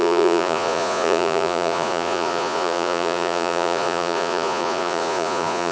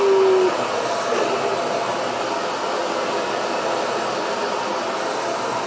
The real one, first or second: second